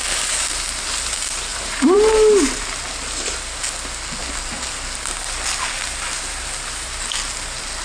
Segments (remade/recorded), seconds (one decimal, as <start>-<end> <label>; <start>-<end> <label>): 0.0-1.5 recorded; 1.5-2.8 remade; 2.8-7.8 recorded